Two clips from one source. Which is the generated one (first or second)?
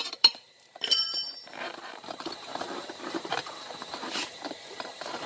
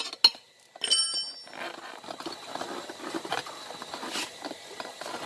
first